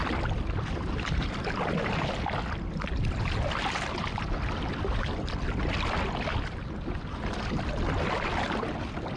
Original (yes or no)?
yes